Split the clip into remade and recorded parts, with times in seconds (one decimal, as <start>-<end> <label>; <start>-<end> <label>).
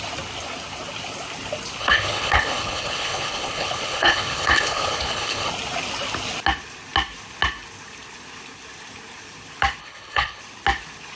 0.0-1.8 recorded; 1.8-5.5 remade; 5.5-9.8 recorded; 9.8-10.4 remade; 10.4-11.2 recorded